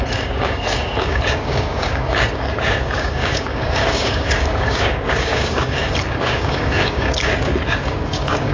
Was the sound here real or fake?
fake